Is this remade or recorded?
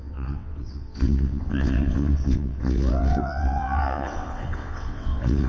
remade